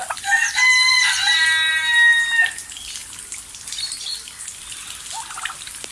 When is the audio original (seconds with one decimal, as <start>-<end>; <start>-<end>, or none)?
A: 1.3-5.9